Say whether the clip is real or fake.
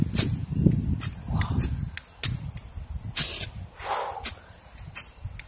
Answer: real